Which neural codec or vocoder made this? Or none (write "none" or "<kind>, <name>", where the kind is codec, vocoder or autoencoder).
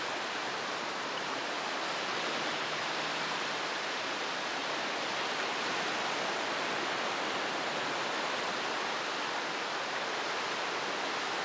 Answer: none